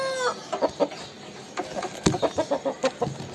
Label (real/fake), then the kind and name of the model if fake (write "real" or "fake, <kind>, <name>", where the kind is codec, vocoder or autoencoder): real